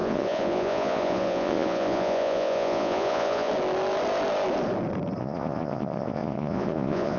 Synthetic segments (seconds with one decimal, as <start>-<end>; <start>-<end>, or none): 0.0-3.5; 5.2-7.2